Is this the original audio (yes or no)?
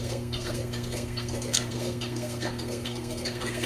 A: no